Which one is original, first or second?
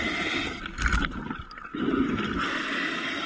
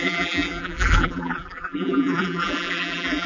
first